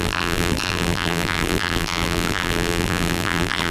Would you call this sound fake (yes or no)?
yes